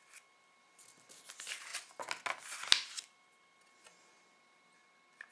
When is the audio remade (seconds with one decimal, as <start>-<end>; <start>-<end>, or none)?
none